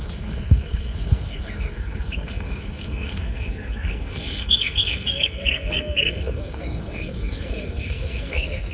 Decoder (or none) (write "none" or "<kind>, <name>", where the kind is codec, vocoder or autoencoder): codec, SNAC